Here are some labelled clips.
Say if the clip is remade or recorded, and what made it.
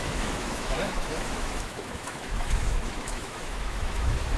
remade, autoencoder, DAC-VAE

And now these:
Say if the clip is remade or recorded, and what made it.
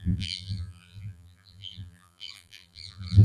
remade, vocoder, BigVGAN v2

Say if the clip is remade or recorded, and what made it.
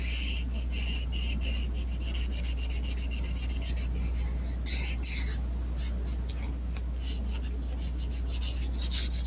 recorded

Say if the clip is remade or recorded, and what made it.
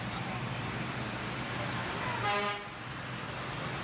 recorded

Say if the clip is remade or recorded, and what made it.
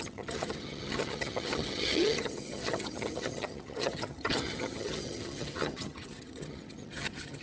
remade, vocoder, HiFi-GAN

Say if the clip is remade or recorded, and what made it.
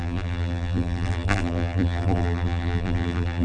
remade, vocoder, BigVGAN v2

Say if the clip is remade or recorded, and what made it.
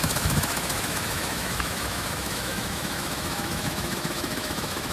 remade, autoencoder, DAC-VAE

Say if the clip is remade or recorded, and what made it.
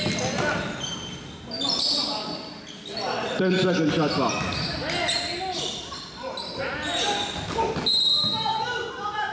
recorded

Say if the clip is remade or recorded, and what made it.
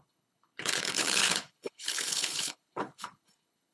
remade, codec, HILCodec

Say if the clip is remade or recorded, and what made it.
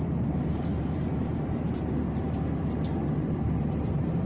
remade, vocoder, BigVGAN v2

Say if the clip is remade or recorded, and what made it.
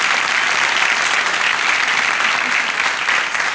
recorded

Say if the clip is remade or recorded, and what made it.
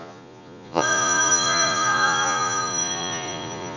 remade, vocoder, Vocos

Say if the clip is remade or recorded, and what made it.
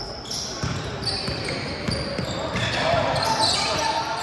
recorded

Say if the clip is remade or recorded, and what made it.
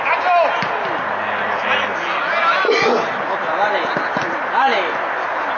recorded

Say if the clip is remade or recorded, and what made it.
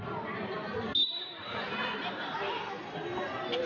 recorded